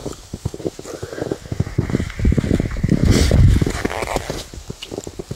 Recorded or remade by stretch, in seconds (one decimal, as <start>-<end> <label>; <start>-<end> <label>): 0.0-0.6 remade; 0.6-5.4 recorded